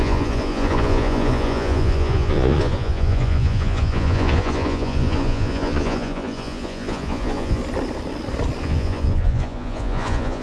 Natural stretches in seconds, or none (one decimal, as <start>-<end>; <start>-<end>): 7.6-8.6